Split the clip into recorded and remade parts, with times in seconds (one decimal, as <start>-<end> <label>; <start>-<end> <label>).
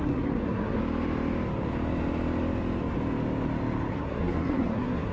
0.0-0.8 remade; 0.8-3.9 recorded; 3.9-5.1 remade